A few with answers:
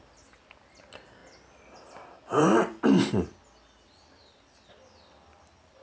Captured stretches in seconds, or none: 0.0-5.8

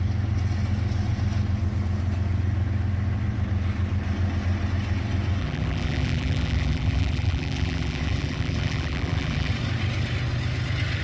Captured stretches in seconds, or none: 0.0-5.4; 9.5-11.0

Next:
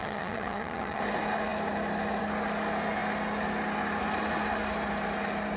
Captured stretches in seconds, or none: 1.0-5.6

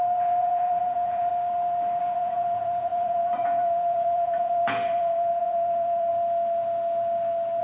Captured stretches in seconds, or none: 1.3-2.0; 6.1-7.6